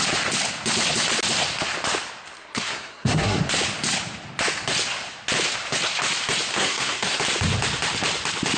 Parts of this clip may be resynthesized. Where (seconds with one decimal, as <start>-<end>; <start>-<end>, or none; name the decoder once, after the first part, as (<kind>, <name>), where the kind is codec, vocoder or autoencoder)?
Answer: 2.4-3.4 (codec, SNAC); 6.5-7.2